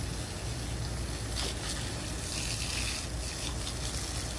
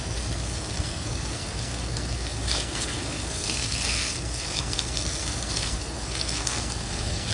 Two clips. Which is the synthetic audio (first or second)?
second